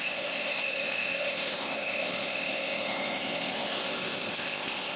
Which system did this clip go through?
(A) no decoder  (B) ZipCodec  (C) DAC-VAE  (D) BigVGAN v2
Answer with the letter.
B